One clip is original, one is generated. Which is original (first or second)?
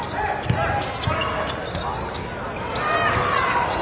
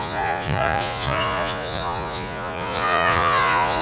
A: first